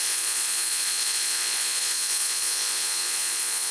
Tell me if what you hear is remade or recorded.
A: remade